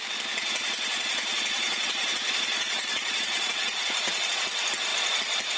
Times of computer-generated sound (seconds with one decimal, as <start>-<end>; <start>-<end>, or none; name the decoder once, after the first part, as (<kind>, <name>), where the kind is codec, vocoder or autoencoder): 0.9-4.3 (vocoder, Vocos)